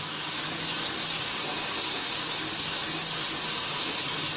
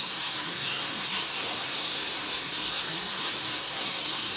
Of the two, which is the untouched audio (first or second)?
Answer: first